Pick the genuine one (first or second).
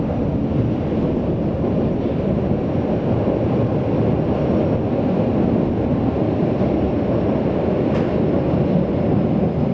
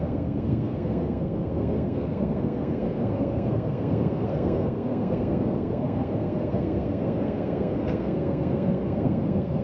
first